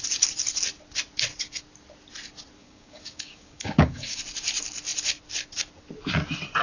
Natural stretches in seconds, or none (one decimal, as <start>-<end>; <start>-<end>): 0.0-2.6; 4.2-6.6